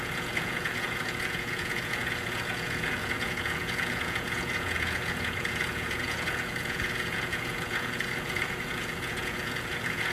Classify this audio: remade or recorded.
remade